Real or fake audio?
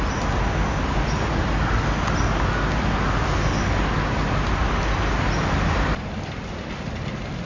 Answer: real